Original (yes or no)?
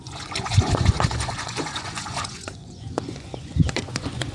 no